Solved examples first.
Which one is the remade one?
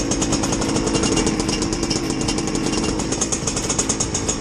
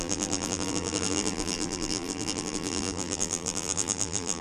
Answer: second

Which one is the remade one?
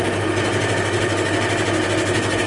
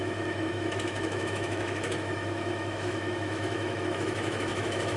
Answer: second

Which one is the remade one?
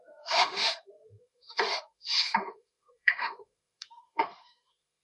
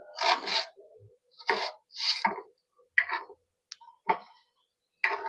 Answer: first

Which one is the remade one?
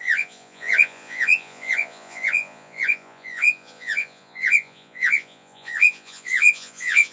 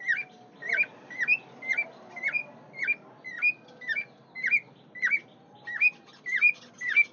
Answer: first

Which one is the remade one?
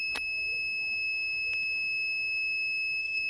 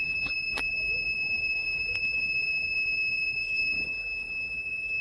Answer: second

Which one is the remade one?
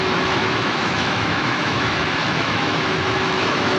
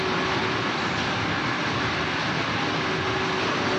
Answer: first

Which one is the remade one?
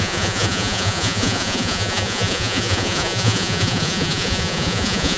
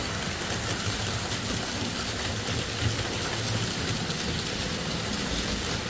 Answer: first